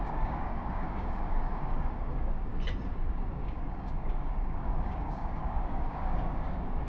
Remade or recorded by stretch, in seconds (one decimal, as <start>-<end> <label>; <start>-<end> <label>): 0.0-2.5 remade; 2.5-3.1 recorded; 3.1-6.9 remade